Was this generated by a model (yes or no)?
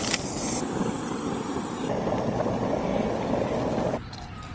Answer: no